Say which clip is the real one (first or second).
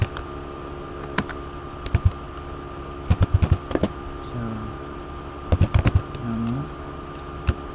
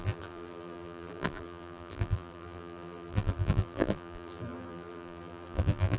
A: first